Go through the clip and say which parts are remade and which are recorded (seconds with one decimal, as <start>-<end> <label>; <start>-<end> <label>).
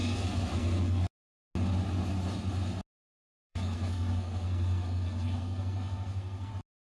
0.0-1.1 remade; 1.1-3.2 recorded; 3.2-6.5 remade; 6.5-6.9 recorded